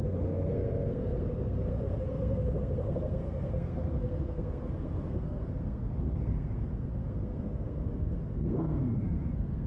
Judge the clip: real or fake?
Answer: fake